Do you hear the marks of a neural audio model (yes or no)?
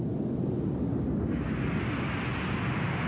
no